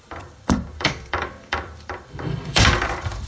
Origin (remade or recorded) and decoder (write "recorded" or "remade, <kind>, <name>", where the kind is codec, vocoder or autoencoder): remade, vocoder, BigVGAN v2